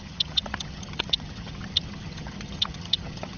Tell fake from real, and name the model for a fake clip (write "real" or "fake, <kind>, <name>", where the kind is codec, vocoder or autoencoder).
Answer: fake, vocoder, HiFi-GAN